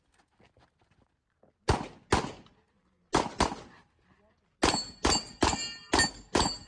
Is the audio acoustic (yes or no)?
yes